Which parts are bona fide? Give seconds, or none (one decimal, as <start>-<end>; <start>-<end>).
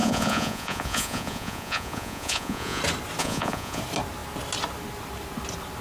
2.8-3.2; 3.8-5.8